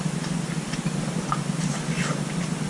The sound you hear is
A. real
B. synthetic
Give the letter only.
A